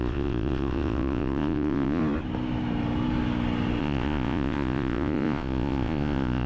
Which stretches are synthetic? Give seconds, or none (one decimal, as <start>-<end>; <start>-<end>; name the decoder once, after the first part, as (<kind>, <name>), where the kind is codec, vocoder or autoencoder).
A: 0.0-2.0 (vocoder, Vocos); 3.8-6.5